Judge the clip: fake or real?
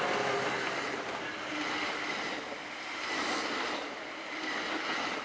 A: real